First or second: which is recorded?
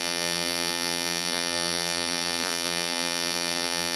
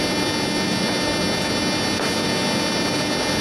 second